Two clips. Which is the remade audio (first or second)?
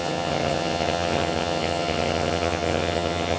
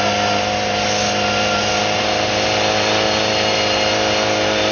first